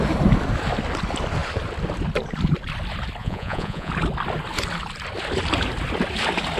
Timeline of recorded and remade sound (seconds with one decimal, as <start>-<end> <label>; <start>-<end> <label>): 0.0-3.2 recorded; 3.2-3.9 remade; 3.9-6.6 recorded